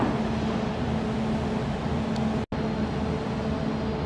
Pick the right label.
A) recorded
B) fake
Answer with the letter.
A